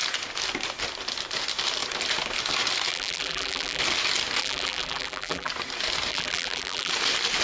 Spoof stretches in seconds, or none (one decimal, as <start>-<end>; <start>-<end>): 2.9-3.8; 4.4-5.5; 6.1-6.9